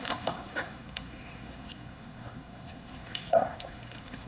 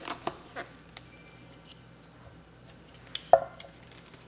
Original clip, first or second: second